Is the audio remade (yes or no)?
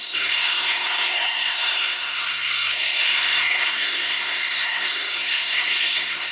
yes